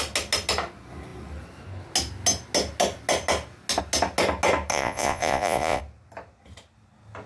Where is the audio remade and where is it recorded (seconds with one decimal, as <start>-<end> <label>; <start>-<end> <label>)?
0.0-4.7 recorded; 4.7-5.8 remade; 5.8-7.3 recorded